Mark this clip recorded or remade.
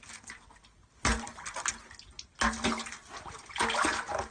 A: recorded